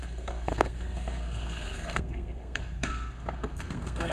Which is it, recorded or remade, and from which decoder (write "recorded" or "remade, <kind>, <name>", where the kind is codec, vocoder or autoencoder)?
remade, codec, SNAC